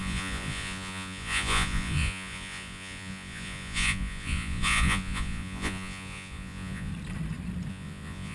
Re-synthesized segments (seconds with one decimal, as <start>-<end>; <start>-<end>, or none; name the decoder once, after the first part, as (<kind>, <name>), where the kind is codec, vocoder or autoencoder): 0.0-6.9 (vocoder, Vocos); 7.7-8.3